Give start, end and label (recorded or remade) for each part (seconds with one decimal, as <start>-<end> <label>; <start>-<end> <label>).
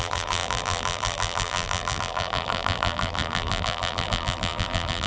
0.0-5.1 remade